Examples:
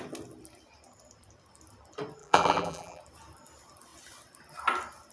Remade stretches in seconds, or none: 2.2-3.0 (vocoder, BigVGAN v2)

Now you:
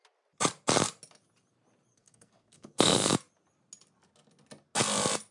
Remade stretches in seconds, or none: 1.9-3.1 (codec, SNAC)

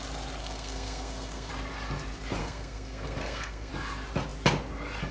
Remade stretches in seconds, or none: 0.4-1.5 (codec, SNAC); 2.4-3.7

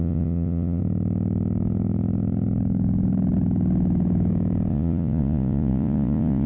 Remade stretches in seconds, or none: 0.0-0.8 (vocoder, Vocos); 4.7-6.5

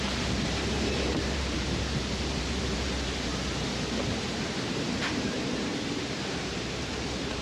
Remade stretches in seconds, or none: 0.0-3.3 (vocoder, BigVGAN v2); 4.0-7.4

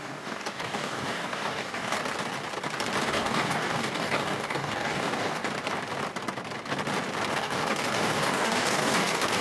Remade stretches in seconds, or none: 0.0-2.0 (codec, DAC); 3.0-5.4; 7.3-9.4